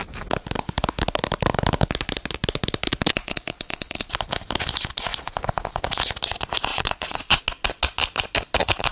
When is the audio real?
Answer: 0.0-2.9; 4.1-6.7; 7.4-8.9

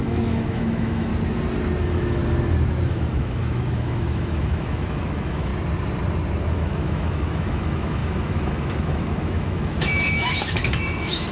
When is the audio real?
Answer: 1.1-1.8; 2.2-2.9; 5.5-6.5

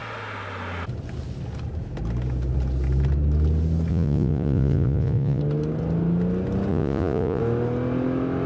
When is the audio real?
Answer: 0.0-3.9; 5.4-6.7; 7.4-8.5

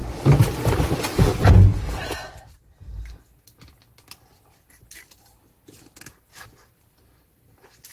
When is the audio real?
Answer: 0.0-7.9

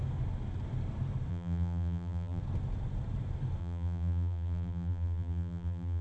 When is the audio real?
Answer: 0.0-1.3; 2.4-3.6